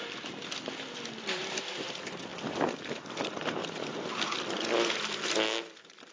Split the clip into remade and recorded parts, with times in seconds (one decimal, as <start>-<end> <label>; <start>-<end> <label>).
0.0-6.1 recorded